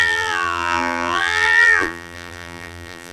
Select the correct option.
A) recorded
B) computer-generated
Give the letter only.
B